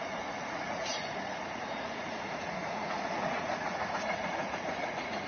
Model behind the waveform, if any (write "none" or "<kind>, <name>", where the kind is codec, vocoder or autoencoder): vocoder, Vocos